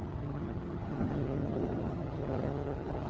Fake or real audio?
fake